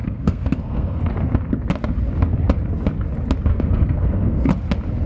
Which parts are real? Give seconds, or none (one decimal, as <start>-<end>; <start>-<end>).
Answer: 1.0-3.5; 4.5-5.1